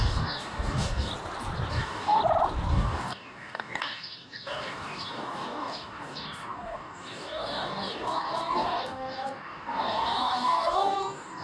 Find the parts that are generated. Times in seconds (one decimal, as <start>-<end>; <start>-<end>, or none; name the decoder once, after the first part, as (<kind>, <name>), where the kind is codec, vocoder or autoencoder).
0.0-1.1 (codec, DAC); 1.7-2.2; 2.7-11.4